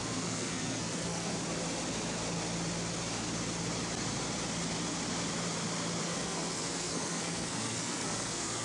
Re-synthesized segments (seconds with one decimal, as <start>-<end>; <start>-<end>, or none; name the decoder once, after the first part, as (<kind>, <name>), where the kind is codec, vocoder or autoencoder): 0.0-1.3 (codec, SNAC); 6.0-8.6